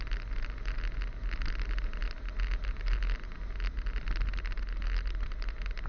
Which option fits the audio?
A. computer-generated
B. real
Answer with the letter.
B